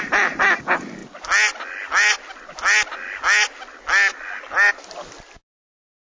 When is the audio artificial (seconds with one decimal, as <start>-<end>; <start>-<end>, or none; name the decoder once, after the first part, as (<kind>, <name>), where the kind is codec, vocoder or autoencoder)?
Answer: none